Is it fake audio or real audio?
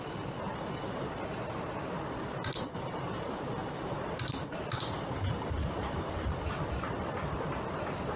fake